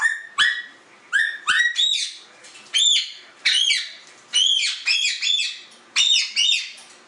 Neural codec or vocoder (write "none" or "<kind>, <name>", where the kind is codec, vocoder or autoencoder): none